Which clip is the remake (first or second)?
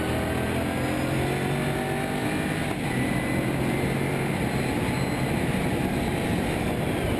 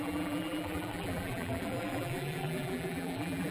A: second